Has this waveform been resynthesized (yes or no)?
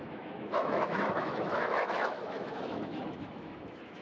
yes